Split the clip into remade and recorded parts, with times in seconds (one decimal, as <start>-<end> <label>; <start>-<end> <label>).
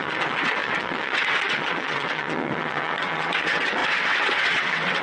0.0-5.0 remade